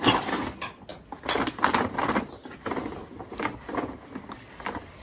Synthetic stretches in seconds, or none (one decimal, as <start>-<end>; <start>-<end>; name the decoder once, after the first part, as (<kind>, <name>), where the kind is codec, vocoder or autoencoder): none